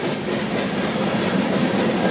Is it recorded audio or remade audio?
recorded